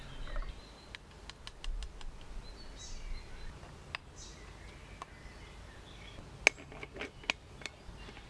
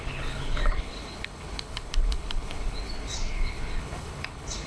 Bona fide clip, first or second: first